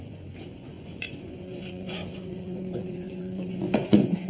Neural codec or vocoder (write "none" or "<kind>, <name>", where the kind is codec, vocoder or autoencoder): vocoder, Vocos